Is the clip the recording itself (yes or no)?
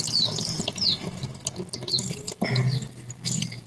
yes